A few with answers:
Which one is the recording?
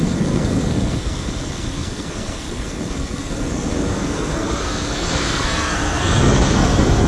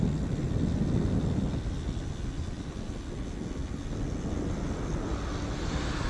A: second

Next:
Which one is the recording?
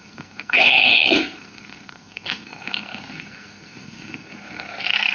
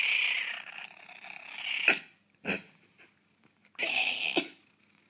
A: second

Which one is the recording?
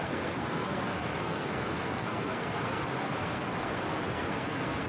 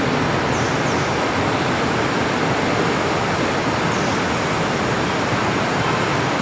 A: second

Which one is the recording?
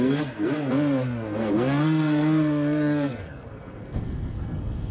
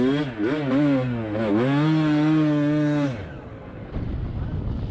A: second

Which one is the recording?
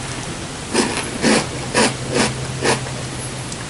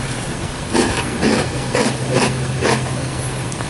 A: first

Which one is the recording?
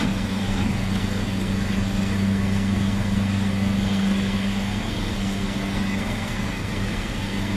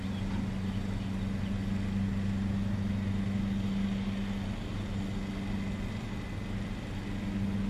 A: second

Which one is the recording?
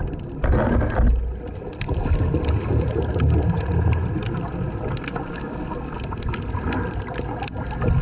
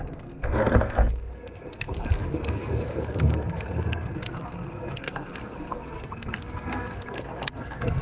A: first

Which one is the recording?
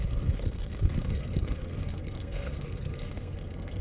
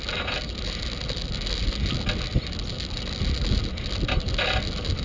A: second